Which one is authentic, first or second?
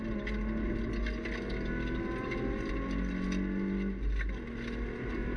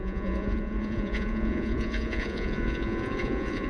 first